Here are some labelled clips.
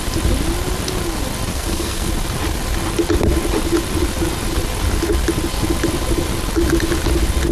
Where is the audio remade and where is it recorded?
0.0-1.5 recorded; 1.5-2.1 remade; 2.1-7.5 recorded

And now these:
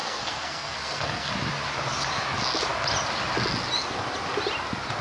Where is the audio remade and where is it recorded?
0.0-1.3 remade; 1.3-5.0 recorded

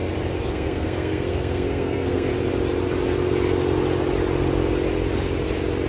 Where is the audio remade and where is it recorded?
0.0-0.5 recorded; 0.5-2.3 remade; 2.3-5.9 recorded

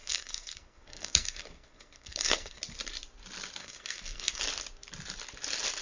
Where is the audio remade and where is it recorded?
0.0-2.6 remade; 2.6-3.6 recorded; 3.6-4.4 remade; 4.4-5.8 recorded

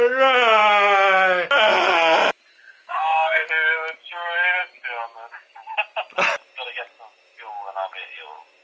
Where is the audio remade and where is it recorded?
0.0-2.5 recorded; 2.5-3.5 remade; 3.5-8.6 recorded

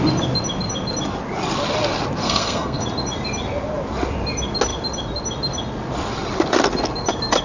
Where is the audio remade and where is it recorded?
0.0-2.2 recorded; 2.2-2.8 remade; 2.8-7.4 recorded

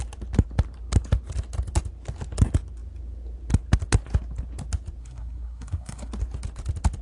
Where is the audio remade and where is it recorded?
0.0-5.0 recorded; 5.0-6.1 remade; 6.1-7.0 recorded